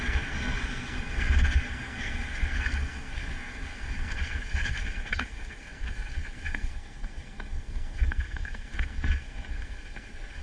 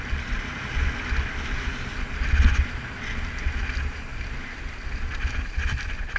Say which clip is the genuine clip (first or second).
second